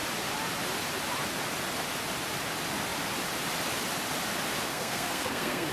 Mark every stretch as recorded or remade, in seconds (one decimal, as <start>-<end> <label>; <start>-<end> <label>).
0.0-4.7 recorded; 4.7-5.7 remade